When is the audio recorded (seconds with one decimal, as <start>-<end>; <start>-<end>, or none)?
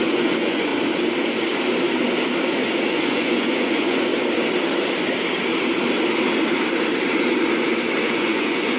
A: 0.7-2.9; 4.1-8.0